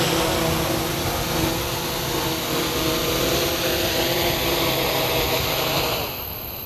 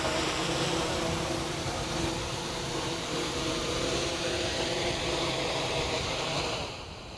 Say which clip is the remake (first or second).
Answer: second